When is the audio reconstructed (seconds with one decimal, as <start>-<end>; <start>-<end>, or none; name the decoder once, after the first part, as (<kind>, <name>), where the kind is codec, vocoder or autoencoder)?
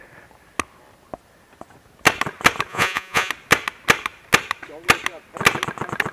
2.7-3.3 (vocoder, Vocos)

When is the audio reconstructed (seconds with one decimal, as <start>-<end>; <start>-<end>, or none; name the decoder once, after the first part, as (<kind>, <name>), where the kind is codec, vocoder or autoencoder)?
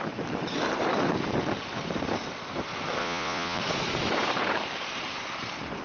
3.0-3.6 (vocoder, Vocos)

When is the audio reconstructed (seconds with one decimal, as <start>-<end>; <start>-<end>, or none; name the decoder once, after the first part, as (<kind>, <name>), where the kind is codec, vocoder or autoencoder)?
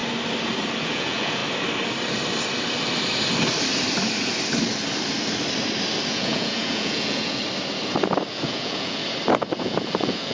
0.8-1.4 (vocoder, Vocos); 6.1-7.4; 8.3-9.0; 9.6-10.3